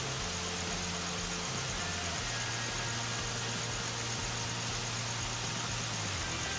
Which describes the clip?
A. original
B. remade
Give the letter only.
A